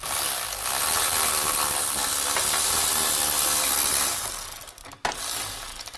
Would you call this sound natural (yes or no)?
yes